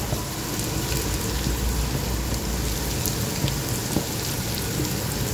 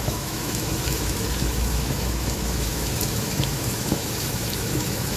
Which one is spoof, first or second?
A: second